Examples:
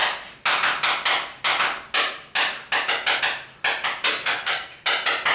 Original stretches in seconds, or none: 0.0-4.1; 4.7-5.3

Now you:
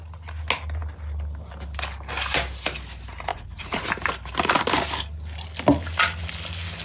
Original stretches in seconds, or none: 0.0-3.3; 3.8-6.8

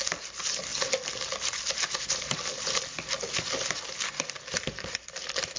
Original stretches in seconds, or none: 0.0-5.6

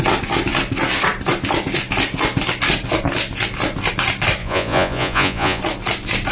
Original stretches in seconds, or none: 0.0-4.4; 5.6-6.3

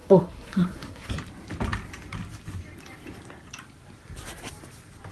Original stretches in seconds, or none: 1.1-5.1

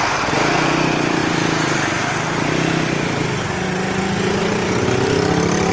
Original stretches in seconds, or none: 0.0-5.7

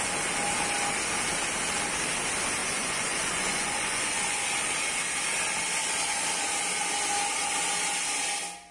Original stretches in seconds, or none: 0.0-2.6; 4.4-8.7